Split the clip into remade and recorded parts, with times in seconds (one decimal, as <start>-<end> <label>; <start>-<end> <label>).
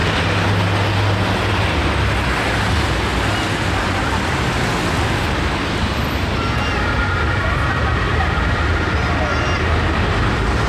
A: 0.0-10.7 recorded